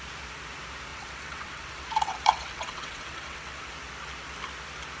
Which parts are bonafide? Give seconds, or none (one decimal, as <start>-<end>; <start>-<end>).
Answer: 0.0-0.9; 3.7-5.0